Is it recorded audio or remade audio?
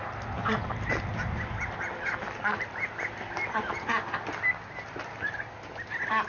recorded